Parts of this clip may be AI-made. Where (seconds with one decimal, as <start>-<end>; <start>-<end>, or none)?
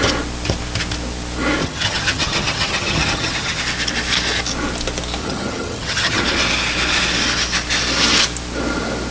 1.6-3.6; 5.2-6.2